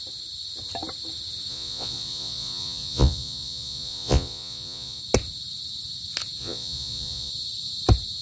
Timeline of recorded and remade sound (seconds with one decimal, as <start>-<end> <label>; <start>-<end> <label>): 0.0-1.5 recorded; 1.5-5.0 remade; 5.0-6.4 recorded; 6.4-7.3 remade; 7.3-8.2 recorded